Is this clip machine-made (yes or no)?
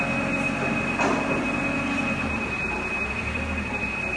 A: no